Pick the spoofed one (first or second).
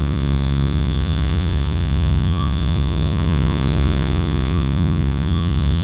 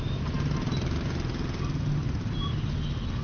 first